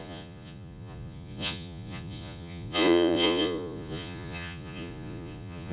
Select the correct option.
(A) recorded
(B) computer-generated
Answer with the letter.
B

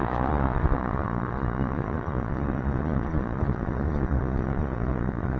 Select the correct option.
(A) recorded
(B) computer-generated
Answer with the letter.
B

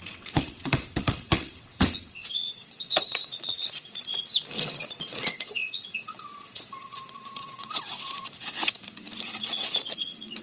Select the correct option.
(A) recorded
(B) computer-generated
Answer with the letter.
B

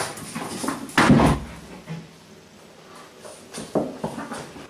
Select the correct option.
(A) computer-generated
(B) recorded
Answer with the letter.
B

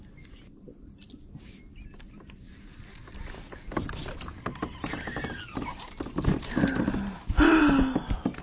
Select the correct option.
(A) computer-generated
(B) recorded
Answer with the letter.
B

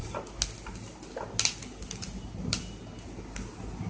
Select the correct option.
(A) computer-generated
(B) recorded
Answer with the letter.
B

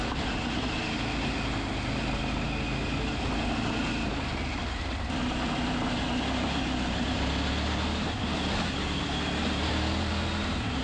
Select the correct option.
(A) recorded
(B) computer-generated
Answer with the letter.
A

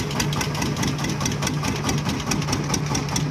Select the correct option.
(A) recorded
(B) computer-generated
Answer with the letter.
A